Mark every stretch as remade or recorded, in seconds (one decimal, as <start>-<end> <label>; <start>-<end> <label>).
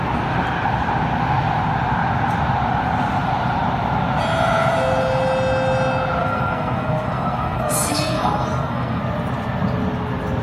0.0-6.2 recorded; 6.2-9.0 remade; 9.0-10.4 recorded